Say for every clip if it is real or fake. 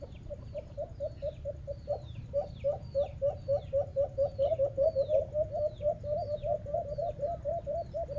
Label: real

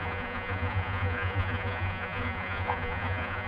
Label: fake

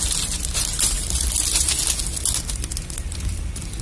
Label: real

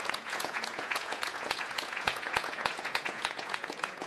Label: fake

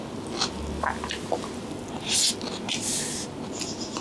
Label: real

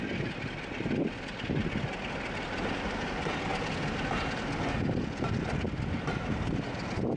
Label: real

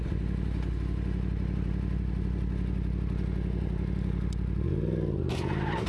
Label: real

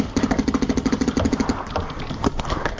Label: real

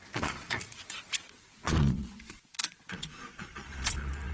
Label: fake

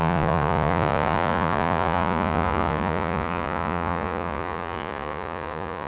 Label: fake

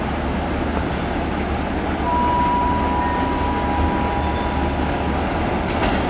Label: real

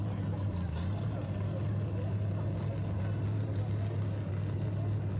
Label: real